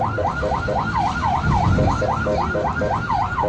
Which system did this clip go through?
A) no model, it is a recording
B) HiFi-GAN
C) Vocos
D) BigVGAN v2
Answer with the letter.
A